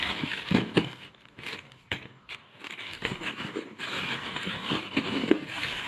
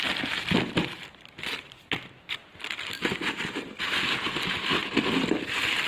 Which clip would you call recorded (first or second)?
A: second